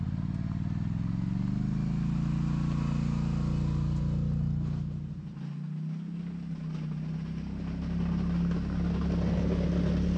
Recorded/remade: recorded